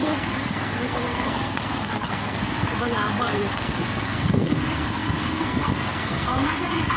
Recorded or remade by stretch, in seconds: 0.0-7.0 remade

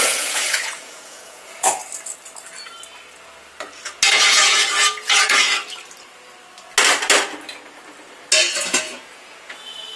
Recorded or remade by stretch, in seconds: 0.0-1.8 remade; 1.8-4.1 recorded; 4.1-5.6 remade; 5.6-8.5 recorded; 8.5-10.0 remade

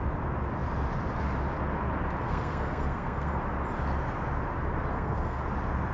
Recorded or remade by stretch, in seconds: 0.0-2.2 recorded; 2.2-3.4 remade; 3.4-4.9 recorded; 4.9-5.4 remade; 5.4-5.9 recorded

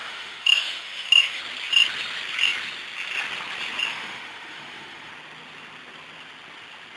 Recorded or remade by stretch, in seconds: 0.0-1.4 remade; 1.4-3.9 recorded; 3.9-5.1 remade; 5.1-7.0 recorded

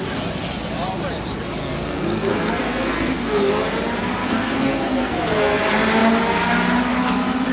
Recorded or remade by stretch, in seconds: 0.0-1.6 recorded; 1.6-3.5 remade; 3.5-4.2 recorded; 4.2-5.6 remade; 5.6-7.5 recorded